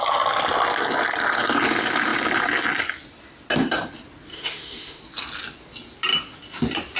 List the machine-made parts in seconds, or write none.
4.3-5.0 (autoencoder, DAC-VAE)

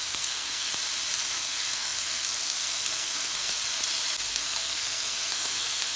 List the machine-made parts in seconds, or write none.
0.0-0.7 (codec, SNAC); 1.3-3.6; 4.3-6.0

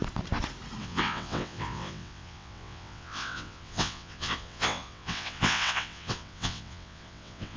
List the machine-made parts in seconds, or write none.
0.8-7.6 (vocoder, WaveNeXt)